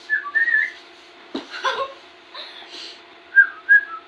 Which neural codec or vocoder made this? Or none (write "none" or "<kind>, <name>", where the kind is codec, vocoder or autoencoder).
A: none